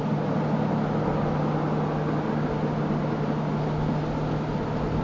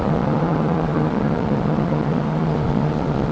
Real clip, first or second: first